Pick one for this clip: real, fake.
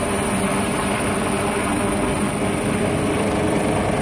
real